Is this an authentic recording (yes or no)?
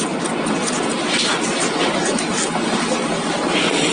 yes